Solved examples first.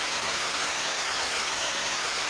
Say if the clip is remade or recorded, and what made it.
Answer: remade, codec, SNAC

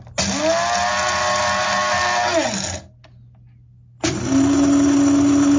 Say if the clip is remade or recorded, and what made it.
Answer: recorded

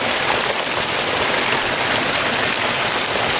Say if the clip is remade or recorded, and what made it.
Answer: recorded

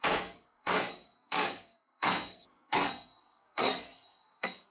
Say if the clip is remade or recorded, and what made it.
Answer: remade, codec, SNAC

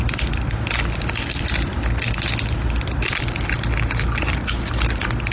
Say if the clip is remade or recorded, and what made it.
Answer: recorded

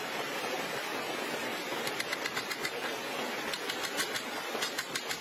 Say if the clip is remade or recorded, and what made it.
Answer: remade, vocoder, BigVGAN v2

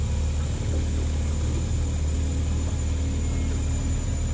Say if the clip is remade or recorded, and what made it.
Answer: recorded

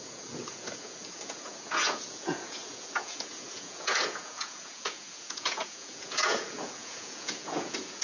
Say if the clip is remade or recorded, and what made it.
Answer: remade, vocoder, Vocos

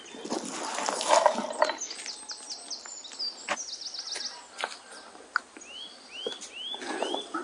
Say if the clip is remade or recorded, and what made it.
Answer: recorded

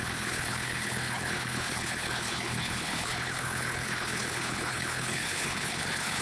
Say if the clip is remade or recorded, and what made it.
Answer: remade, codec, HILCodec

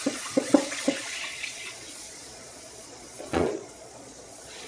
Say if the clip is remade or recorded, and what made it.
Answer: remade, vocoder, Vocos